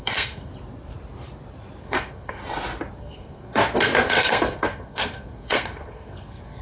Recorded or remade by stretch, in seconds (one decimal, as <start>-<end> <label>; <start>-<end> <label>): 0.0-0.5 remade; 0.5-1.8 recorded; 1.8-2.4 remade; 2.4-3.0 recorded; 3.0-6.6 remade